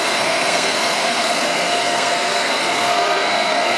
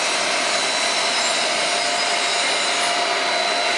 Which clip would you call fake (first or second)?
first